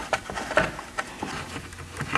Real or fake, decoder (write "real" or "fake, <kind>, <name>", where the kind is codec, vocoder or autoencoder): real